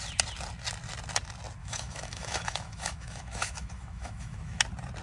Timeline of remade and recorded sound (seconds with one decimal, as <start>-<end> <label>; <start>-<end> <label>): 0.0-1.6 recorded; 1.6-4.6 remade; 4.6-5.0 recorded